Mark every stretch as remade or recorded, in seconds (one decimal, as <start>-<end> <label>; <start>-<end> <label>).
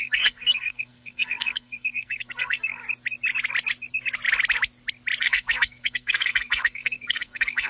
0.0-2.8 remade; 2.8-5.2 recorded; 5.2-7.7 remade